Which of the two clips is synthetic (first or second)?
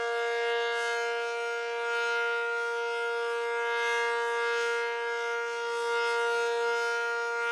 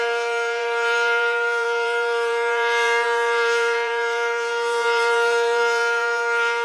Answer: second